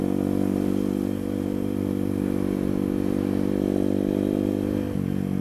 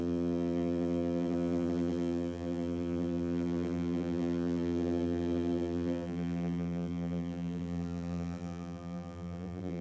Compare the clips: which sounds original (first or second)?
first